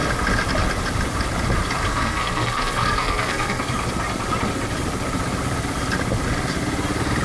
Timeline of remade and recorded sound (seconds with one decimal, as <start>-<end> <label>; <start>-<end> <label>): 0.0-1.9 recorded; 1.9-3.6 remade; 3.6-7.2 recorded